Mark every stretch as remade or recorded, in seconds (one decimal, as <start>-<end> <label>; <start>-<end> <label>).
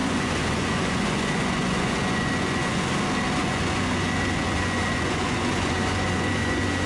0.0-2.9 remade; 2.9-3.4 recorded; 3.4-6.9 remade